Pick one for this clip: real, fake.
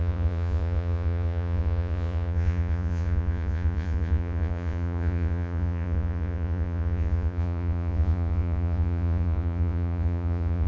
fake